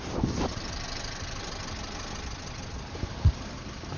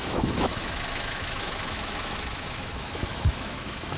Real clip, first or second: first